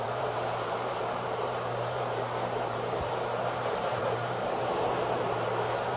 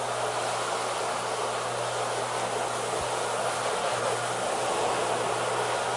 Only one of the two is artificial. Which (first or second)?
first